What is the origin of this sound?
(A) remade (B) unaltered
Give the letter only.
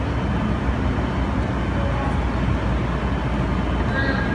B